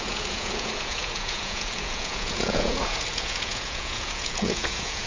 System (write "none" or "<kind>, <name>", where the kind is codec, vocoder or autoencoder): vocoder, Vocos